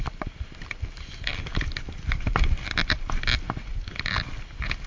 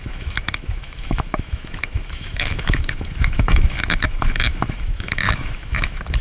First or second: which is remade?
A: second